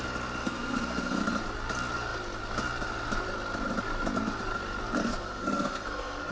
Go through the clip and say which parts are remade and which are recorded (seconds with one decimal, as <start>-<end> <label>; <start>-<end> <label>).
0.0-0.4 recorded; 0.4-1.2 remade; 1.2-5.0 recorded; 5.0-6.3 remade